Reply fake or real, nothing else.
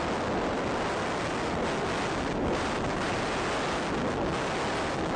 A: real